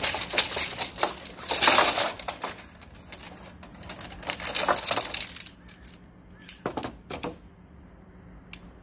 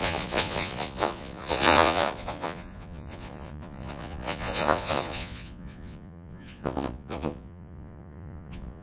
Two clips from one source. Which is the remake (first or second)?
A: second